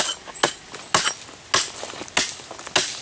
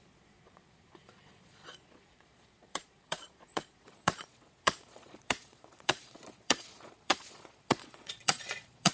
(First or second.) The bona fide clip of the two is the first